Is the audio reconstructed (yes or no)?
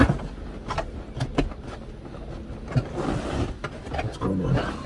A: no